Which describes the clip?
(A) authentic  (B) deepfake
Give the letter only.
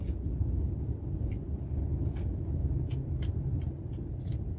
A